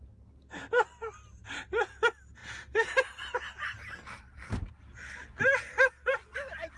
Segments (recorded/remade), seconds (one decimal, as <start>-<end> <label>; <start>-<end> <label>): 0.0-6.8 recorded

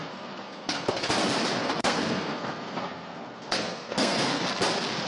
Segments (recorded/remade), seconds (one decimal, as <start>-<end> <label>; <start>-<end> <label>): 0.0-1.1 remade; 1.1-1.6 recorded; 1.6-4.4 remade; 4.4-5.1 recorded

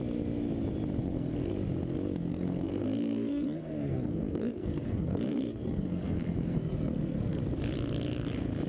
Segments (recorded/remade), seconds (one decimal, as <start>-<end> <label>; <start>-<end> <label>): 0.0-1.0 recorded; 1.0-1.5 remade; 1.5-2.3 recorded; 2.3-7.4 remade; 7.4-8.7 recorded

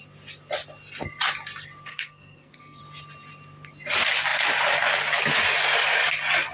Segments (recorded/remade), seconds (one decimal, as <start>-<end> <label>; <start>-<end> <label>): 0.0-1.9 recorded; 1.9-2.8 remade; 2.8-6.5 recorded